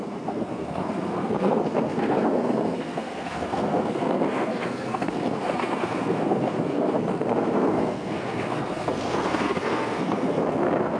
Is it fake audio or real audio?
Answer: fake